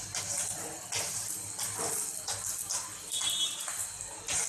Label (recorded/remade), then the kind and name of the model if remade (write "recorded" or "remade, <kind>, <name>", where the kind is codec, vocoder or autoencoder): recorded